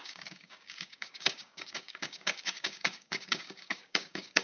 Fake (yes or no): yes